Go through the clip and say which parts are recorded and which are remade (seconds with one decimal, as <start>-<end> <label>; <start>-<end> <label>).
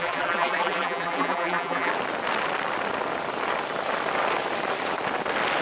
0.0-1.9 remade; 1.9-5.6 recorded